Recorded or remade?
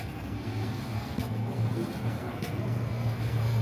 remade